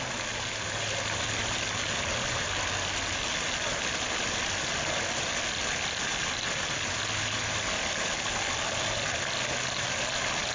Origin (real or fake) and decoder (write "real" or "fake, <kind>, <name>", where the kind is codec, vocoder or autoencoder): real